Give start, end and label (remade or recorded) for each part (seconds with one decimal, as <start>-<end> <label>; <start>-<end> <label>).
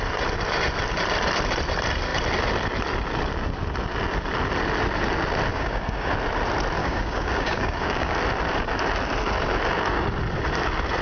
0.0-5.5 recorded; 5.5-6.1 remade; 6.1-6.8 recorded; 6.8-8.2 remade; 8.2-11.0 recorded